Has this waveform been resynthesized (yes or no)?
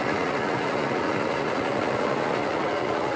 yes